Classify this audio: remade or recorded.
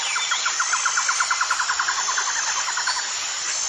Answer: recorded